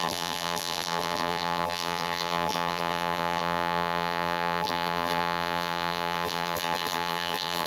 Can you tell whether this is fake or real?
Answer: fake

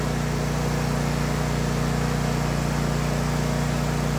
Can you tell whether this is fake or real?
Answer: real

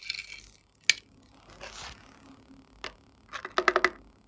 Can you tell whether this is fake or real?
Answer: real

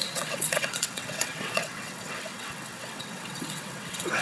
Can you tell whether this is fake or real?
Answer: fake